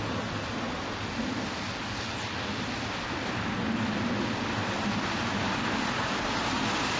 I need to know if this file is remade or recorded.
recorded